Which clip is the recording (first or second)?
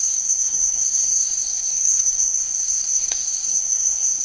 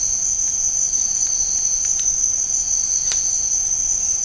second